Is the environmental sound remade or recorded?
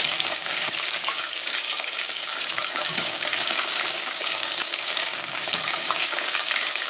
remade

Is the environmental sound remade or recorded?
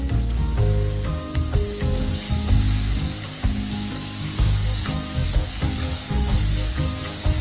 remade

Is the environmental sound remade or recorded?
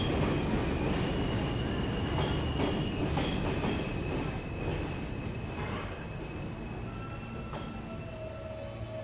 recorded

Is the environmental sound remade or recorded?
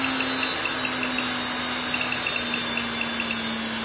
recorded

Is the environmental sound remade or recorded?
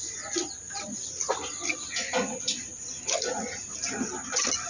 recorded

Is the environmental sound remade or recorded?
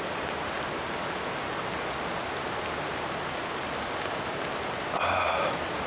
recorded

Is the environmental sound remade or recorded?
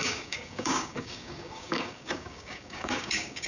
remade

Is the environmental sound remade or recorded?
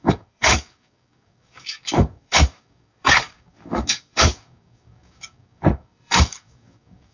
remade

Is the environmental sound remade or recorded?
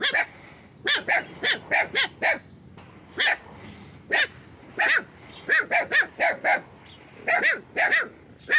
recorded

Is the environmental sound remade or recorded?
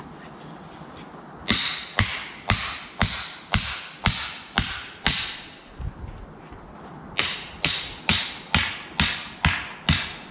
recorded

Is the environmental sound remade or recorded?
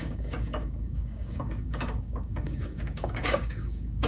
remade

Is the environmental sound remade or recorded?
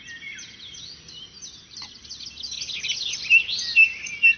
recorded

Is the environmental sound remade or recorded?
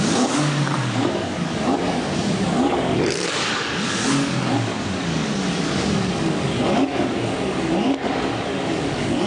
remade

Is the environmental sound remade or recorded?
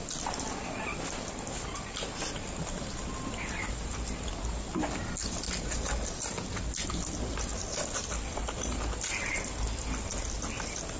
recorded